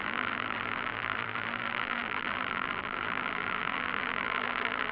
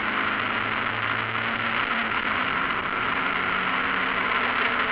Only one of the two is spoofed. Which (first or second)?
first